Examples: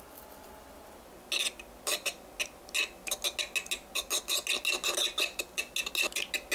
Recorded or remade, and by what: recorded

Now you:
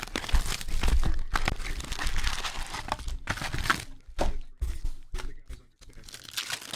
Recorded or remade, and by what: recorded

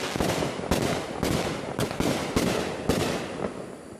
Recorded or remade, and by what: recorded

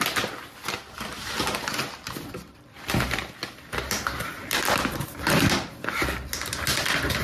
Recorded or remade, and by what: remade, vocoder, BigVGAN v2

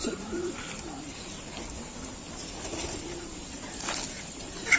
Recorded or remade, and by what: remade, vocoder, BigVGAN v2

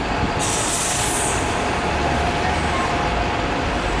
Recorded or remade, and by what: recorded